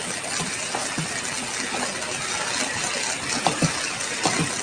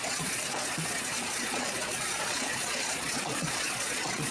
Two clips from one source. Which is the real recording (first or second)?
first